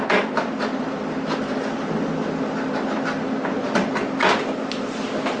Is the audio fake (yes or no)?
no